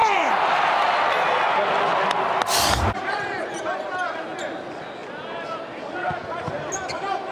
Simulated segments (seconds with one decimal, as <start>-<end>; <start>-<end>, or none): 0.0-0.6